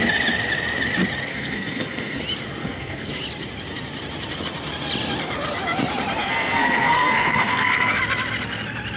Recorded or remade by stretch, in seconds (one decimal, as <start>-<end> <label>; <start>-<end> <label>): 0.0-1.3 recorded; 1.3-2.2 remade; 2.2-2.6 recorded; 2.6-3.1 remade; 3.1-6.2 recorded; 6.2-8.0 remade; 8.0-9.0 recorded